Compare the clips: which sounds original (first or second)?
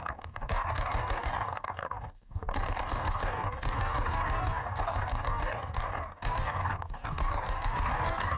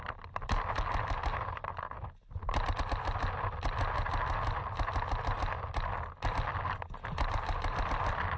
second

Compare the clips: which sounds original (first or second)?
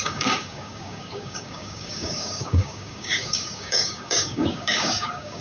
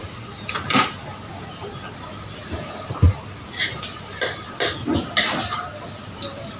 second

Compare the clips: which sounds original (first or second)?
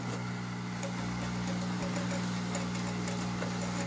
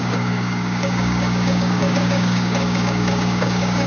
first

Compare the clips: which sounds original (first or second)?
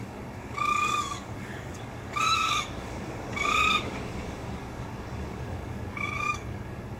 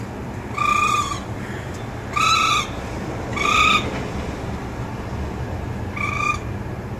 second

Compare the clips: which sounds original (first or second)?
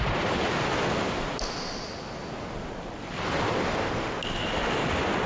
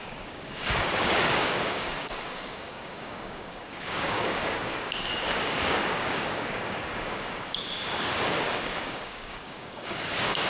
first